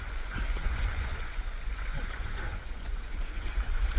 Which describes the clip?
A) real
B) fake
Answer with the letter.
B